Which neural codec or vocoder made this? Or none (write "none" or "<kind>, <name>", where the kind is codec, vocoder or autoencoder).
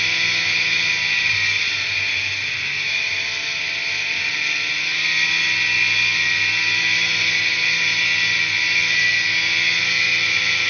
none